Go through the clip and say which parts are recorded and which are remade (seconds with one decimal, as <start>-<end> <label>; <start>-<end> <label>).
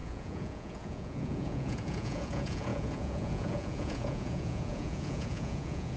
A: 0.0-6.0 remade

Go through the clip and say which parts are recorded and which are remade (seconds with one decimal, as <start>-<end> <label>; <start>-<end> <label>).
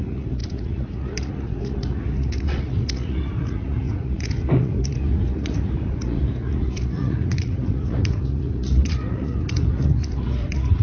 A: 0.0-10.8 remade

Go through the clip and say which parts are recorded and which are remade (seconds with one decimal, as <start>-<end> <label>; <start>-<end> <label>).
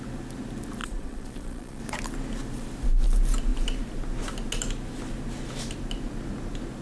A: 0.0-0.8 recorded; 0.8-1.8 remade; 1.8-6.8 recorded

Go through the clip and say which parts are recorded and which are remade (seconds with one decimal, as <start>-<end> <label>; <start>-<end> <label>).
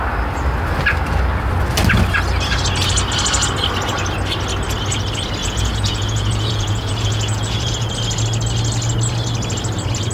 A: 0.0-5.4 recorded; 5.4-7.9 remade; 7.9-10.1 recorded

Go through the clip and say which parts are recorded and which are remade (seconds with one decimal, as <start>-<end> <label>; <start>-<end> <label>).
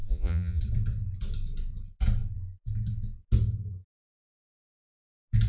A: 0.0-0.6 remade; 0.6-5.5 recorded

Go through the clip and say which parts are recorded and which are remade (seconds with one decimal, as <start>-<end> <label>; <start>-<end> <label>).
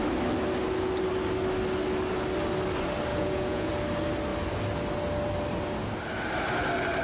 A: 0.0-3.1 recorded; 3.1-3.7 remade; 3.7-7.0 recorded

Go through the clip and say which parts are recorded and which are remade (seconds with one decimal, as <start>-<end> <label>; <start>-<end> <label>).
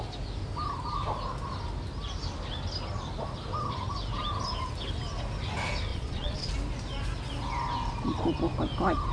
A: 0.0-5.9 recorded; 5.9-6.5 remade; 6.5-9.1 recorded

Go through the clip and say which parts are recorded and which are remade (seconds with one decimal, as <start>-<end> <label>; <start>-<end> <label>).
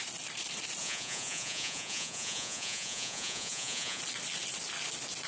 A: 0.0-0.8 recorded; 0.8-4.0 remade; 4.0-5.3 recorded